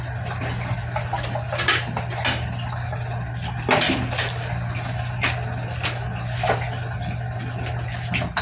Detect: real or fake real